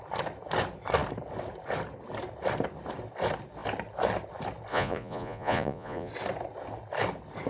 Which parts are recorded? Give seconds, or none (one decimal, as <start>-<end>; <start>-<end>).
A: 0.0-4.7; 6.1-7.5

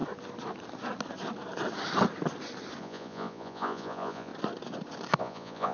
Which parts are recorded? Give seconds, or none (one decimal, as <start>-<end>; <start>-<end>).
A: 0.0-2.8; 4.3-5.2

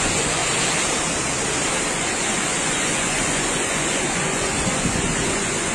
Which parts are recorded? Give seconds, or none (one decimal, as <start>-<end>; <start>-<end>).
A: 0.4-1.9

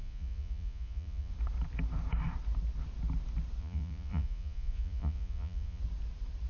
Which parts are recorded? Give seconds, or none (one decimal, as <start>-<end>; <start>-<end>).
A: 1.3-3.6; 5.8-6.5

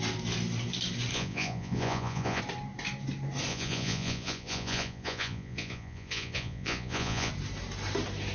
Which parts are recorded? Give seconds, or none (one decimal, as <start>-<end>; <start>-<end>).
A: 0.0-1.1; 2.4-3.5; 7.3-8.3